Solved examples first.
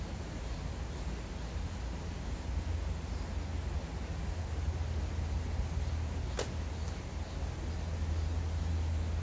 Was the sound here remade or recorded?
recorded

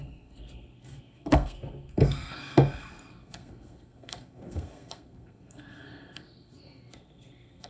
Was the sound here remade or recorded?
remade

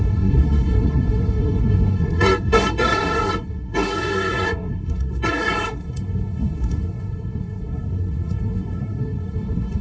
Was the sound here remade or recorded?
remade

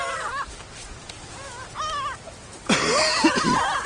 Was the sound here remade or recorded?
recorded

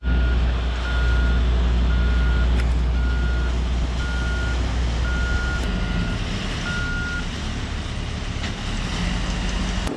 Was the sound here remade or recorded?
recorded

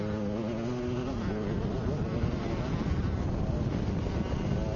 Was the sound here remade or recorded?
recorded